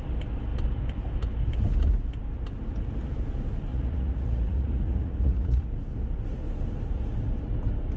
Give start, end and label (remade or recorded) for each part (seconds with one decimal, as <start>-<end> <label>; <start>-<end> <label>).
0.0-3.7 recorded; 3.7-5.6 remade; 5.6-8.0 recorded